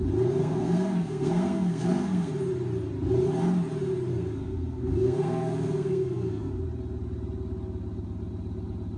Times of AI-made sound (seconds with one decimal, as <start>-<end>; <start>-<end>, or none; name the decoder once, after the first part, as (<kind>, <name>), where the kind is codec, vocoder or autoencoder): 0.4-2.3 (codec, SNAC); 4.1-6.5